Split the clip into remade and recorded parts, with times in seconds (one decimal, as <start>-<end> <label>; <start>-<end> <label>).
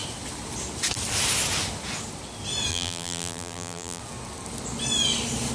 0.0-2.7 recorded; 2.7-4.0 remade; 4.0-5.5 recorded